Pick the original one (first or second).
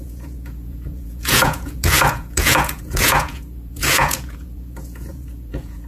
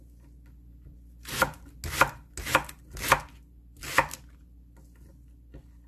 second